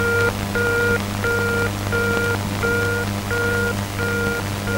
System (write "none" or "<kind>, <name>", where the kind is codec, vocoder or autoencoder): none